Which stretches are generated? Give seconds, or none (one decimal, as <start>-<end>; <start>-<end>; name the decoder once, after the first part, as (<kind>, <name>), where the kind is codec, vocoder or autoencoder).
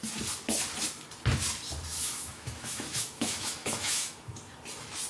1.9-4.4 (autoencoder, DAC-VAE)